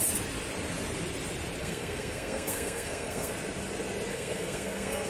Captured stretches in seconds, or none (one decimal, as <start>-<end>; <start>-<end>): 0.0-1.6; 3.3-4.1